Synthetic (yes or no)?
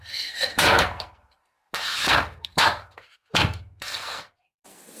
yes